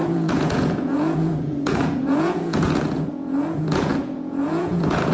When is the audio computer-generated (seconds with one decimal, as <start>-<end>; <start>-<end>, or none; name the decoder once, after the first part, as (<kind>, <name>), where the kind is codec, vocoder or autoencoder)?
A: 0.0-5.1 (vocoder, Vocos)